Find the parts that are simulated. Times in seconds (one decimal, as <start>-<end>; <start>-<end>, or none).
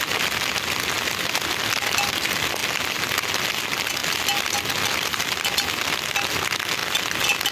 none